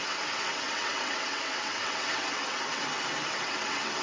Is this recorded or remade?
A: remade